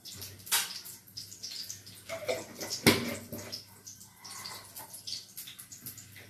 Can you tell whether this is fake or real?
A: real